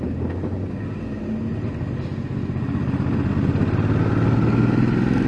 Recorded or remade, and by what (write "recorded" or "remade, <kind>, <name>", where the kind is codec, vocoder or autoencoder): recorded